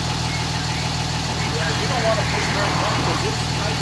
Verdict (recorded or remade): recorded